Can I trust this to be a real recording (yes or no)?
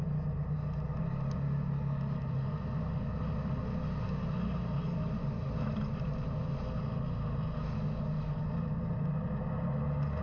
yes